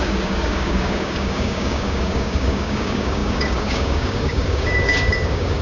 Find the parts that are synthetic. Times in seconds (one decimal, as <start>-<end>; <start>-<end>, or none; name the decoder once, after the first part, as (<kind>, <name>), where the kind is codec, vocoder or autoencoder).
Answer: 0.0-5.6 (codec, DAC)